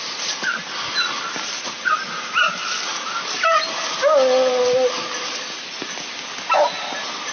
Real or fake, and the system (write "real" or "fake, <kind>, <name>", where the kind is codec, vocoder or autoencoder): real